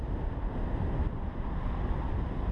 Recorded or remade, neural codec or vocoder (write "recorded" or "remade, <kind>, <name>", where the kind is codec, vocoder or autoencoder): recorded